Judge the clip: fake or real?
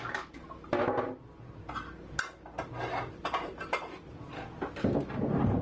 real